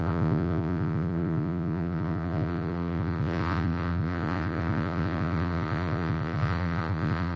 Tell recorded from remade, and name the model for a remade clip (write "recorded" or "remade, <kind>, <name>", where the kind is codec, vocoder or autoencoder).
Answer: remade, vocoder, Vocos